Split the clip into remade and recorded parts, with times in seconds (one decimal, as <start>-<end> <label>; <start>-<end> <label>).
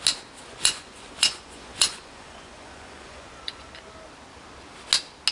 0.0-0.5 recorded; 0.5-3.7 remade; 3.7-5.3 recorded